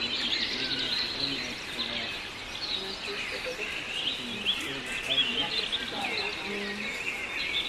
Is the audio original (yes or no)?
yes